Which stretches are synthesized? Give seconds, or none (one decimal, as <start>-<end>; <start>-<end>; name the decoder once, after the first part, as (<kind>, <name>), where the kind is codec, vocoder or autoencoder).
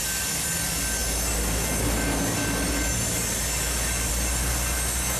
none